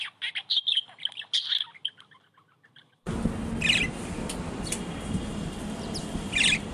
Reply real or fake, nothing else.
real